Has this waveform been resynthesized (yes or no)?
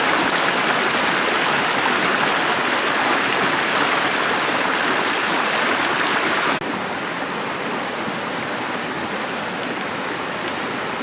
no